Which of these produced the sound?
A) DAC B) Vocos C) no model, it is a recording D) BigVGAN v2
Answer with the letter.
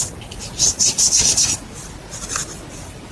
C